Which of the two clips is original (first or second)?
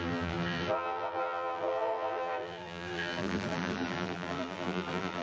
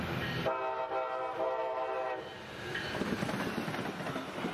second